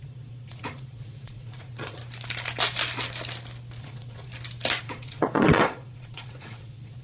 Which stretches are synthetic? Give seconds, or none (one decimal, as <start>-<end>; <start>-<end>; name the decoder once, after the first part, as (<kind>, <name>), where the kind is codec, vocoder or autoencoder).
0.0-2.0 (vocoder, Vocos); 3.8-4.3; 4.8-7.0